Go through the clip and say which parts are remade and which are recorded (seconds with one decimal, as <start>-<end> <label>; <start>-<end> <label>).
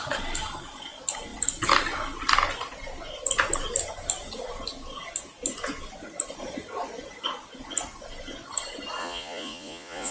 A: 0.0-9.0 recorded; 9.0-10.1 remade